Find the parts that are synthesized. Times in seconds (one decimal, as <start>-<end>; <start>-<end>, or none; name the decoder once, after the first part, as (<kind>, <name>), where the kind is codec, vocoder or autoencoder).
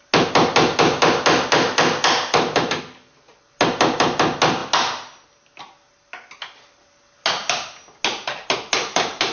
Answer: none